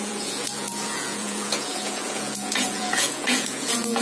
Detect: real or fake fake